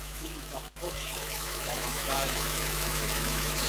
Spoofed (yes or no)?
yes